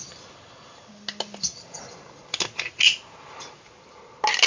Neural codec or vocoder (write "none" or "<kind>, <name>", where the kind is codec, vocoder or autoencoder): none